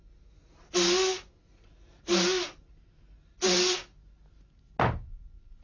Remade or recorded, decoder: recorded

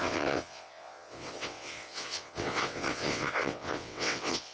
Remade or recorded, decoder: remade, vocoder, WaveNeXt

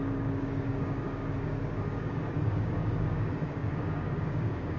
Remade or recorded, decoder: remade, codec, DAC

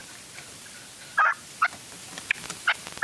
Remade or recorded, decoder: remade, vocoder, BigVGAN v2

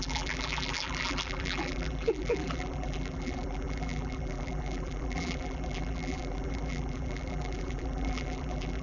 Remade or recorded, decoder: remade, vocoder, BigVGAN v2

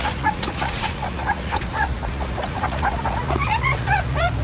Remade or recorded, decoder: remade, vocoder, Vocos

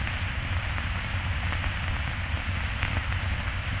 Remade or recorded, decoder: recorded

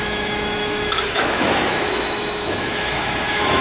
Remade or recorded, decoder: remade, autoencoder, DAC-VAE